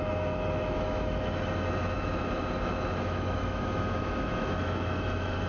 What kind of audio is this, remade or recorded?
remade